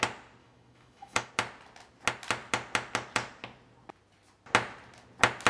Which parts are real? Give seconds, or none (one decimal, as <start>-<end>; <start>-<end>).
0.0-0.4; 1.3-5.5